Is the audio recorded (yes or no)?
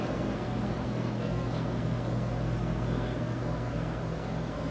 no